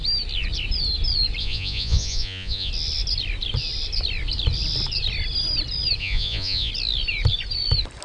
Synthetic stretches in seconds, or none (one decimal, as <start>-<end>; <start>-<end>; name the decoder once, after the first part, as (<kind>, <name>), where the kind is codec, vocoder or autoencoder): 1.4-2.7 (vocoder, Vocos); 6.0-6.7